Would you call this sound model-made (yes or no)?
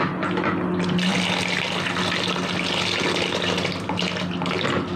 no